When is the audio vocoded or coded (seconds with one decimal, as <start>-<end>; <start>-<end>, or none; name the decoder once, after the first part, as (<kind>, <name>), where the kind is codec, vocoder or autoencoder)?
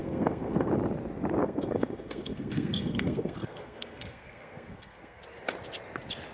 0.0-0.7 (codec, SNAC); 1.4-5.2